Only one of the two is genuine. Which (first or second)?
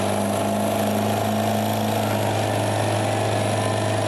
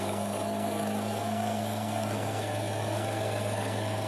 first